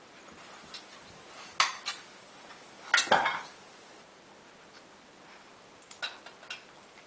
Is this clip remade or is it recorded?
recorded